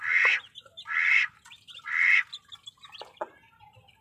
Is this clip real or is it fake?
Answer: real